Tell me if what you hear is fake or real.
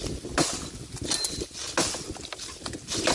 real